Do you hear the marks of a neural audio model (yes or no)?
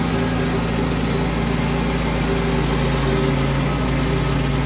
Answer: no